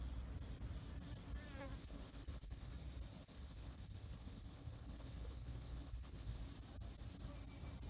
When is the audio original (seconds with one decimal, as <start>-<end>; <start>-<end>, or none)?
0.0-1.8; 2.7-3.2; 6.4-7.9